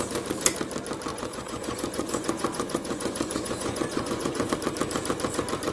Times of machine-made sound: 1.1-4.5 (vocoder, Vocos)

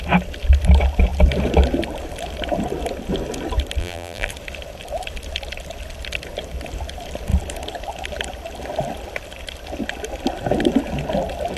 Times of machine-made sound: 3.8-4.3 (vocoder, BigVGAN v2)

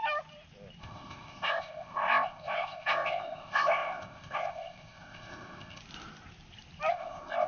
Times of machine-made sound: 0.8-5.8 (codec, ZipCodec); 6.9-7.5

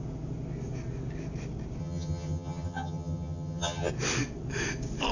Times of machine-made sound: 1.8-3.9 (vocoder, HiFi-GAN)

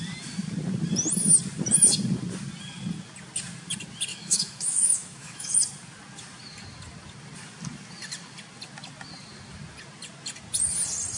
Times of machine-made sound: 4.1-5.6 (autoencoder, DAC-VAE)

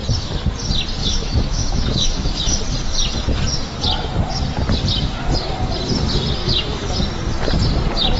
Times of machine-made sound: 1.0-2.6 (autoencoder, DAC-VAE); 6.4-6.9

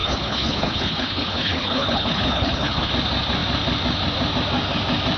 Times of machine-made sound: 0.0-2.9 (codec, HILCodec)